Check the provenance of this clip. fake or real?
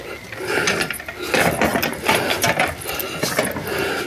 real